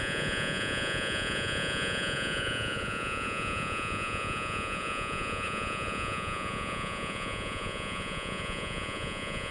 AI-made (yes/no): yes